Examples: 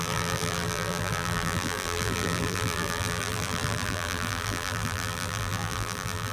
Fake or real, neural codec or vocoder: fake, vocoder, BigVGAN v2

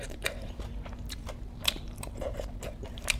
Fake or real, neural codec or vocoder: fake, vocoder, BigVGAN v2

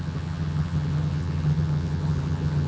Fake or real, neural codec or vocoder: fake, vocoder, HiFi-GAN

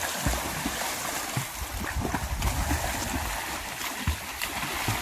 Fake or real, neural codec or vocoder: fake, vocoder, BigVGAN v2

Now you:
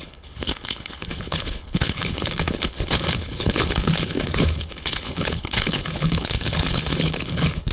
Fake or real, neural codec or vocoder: fake, codec, HILCodec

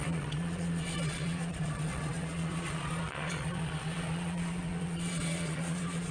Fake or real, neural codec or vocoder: fake, vocoder, Vocos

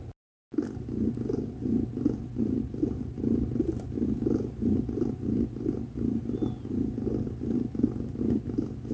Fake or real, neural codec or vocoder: real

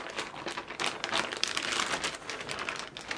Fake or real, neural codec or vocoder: real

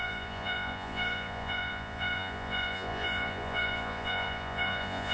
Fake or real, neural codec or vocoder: fake, vocoder, Vocos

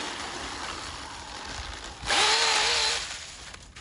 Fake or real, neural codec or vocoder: real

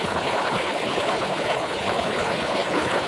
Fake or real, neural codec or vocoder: fake, codec, HILCodec